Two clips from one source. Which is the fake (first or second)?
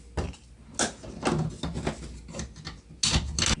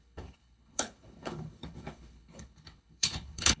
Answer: second